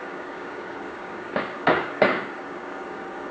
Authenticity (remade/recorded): remade